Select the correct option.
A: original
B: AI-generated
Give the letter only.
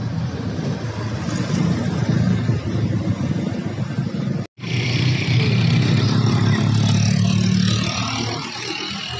A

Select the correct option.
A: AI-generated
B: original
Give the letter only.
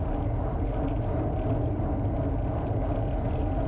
B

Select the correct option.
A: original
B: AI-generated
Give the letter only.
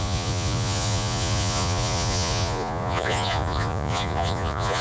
B